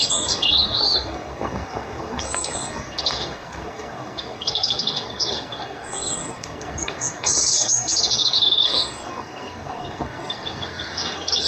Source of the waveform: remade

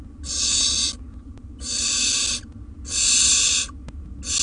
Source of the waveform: recorded